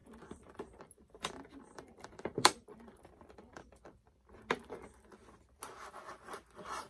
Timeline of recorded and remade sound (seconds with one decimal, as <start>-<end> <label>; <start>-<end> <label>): 0.0-4.1 remade; 4.1-6.9 recorded